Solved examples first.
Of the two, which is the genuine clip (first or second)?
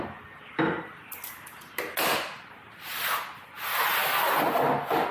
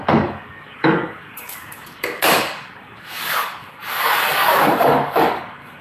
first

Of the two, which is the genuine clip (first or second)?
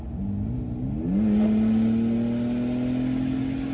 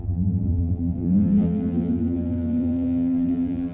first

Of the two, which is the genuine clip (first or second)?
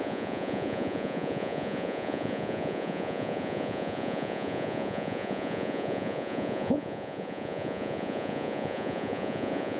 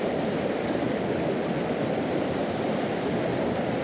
second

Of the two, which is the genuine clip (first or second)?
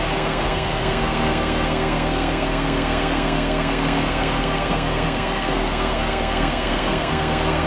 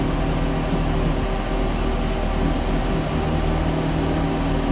second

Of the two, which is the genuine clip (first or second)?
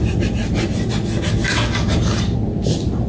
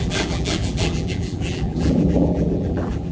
first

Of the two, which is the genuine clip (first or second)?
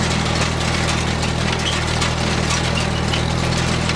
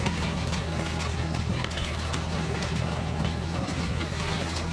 first